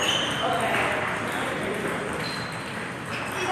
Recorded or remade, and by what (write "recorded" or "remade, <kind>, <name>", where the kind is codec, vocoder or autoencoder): remade, vocoder, BigVGAN v2